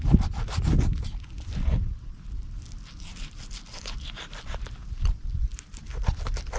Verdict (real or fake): real